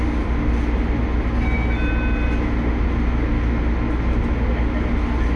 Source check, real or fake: real